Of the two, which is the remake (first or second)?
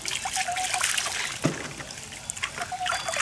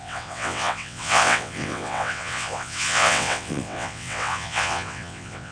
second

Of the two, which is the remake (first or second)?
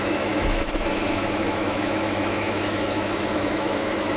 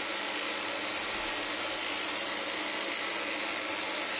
first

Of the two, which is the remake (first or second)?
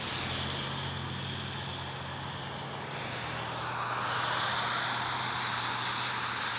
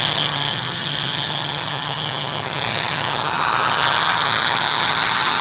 second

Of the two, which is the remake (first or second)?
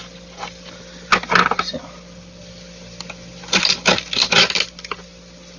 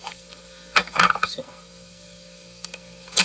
second